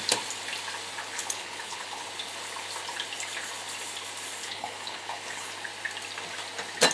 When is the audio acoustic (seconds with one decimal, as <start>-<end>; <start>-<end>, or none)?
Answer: 0.0-1.0; 2.0-4.4; 5.5-6.9